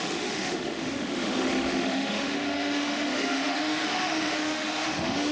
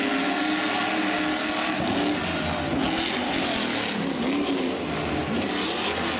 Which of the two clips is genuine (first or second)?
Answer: second